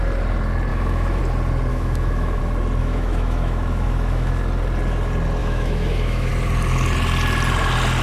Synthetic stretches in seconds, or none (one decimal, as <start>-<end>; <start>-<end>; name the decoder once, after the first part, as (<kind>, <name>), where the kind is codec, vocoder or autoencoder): 0.7-1.2 (autoencoder, DAC-VAE); 1.7-2.4; 2.8-4.3; 5.4-6.3